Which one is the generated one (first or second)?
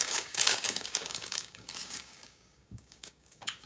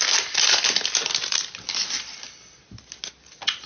first